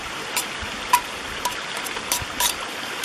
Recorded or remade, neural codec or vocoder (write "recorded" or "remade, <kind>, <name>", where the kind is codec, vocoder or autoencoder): recorded